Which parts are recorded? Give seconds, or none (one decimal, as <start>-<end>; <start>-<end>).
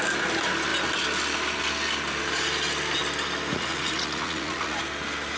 0.0-3.5; 4.8-5.4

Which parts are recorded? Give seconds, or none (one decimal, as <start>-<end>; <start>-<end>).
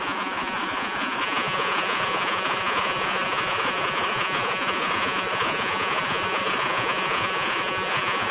none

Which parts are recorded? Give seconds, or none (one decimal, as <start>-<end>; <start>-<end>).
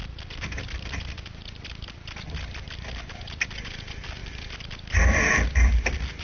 0.0-6.2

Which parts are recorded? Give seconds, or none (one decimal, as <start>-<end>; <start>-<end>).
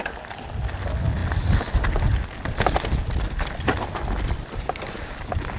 0.0-5.6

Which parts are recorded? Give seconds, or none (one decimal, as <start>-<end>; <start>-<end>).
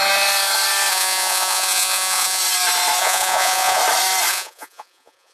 0.0-0.9; 2.4-3.0; 3.8-4.3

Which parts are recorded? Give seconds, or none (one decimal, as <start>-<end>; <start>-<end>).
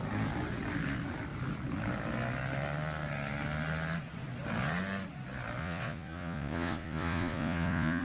0.0-5.6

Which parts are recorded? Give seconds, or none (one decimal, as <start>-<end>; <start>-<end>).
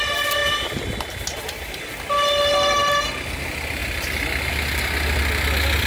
0.0-5.9